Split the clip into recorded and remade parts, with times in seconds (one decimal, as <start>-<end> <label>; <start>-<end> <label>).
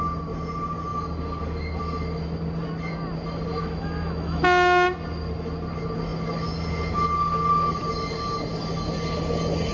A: 0.0-3.5 recorded; 3.5-4.4 remade; 4.4-9.7 recorded